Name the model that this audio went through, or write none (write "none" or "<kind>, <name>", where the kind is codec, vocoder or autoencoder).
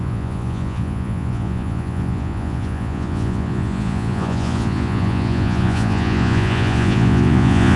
vocoder, Vocos